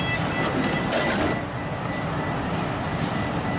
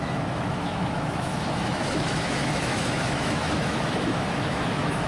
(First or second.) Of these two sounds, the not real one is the second